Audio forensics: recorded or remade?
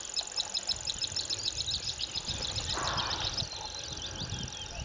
recorded